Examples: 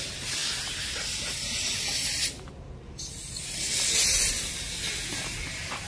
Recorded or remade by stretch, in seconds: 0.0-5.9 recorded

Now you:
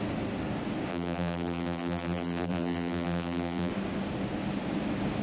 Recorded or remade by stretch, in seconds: 0.0-0.9 recorded; 0.9-3.7 remade; 3.7-5.2 recorded

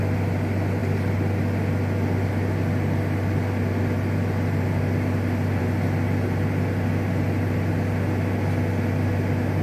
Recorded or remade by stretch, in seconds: 0.0-9.6 recorded

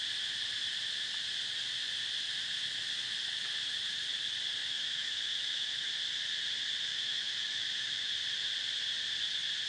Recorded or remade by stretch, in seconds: 0.0-4.6 recorded; 4.6-5.9 remade; 5.9-6.9 recorded; 6.9-8.1 remade; 8.1-9.7 recorded

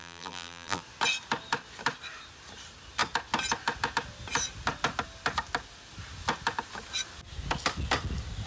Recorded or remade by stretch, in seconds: 0.0-0.8 remade; 0.8-8.5 recorded